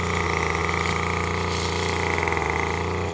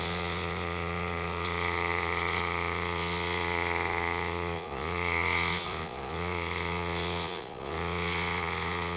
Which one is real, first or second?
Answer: first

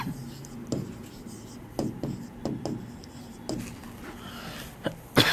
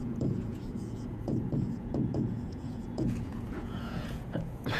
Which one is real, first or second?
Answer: first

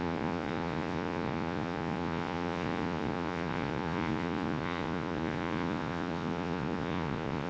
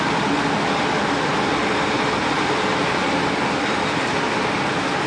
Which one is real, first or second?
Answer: second